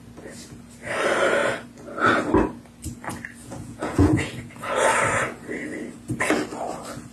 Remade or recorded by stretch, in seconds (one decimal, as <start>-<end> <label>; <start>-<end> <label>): 0.0-3.4 recorded; 3.4-4.3 remade; 4.3-7.1 recorded